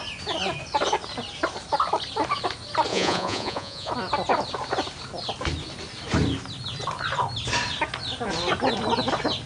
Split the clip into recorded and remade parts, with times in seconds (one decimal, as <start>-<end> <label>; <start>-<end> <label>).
0.0-2.9 recorded; 2.9-3.9 remade; 3.9-9.5 recorded

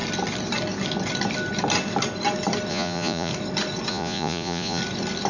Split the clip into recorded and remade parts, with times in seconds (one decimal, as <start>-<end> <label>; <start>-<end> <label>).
0.0-2.7 recorded; 2.7-3.3 remade; 3.3-3.9 recorded; 3.9-4.8 remade; 4.8-5.3 recorded